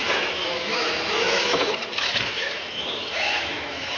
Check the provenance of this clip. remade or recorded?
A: remade